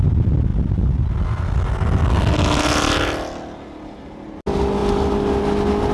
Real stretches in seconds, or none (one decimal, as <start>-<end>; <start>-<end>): 0.0-5.9